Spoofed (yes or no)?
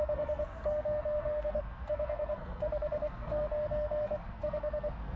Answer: yes